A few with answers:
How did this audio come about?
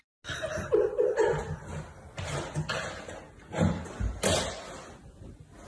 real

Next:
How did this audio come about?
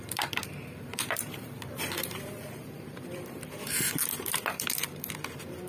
fake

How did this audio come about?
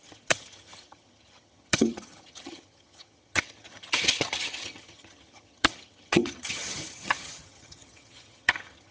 fake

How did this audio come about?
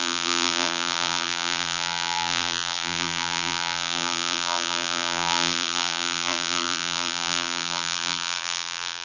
fake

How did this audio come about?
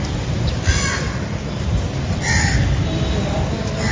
real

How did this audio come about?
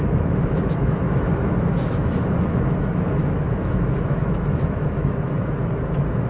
fake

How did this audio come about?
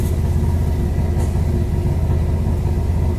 real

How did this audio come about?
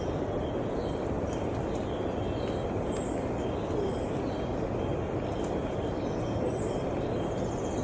real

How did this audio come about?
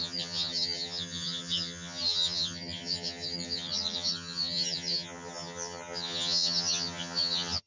fake